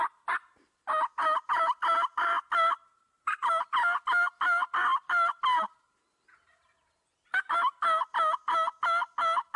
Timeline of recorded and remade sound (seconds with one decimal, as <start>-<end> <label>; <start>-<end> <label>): 0.0-2.9 recorded; 2.9-3.5 remade; 3.5-9.6 recorded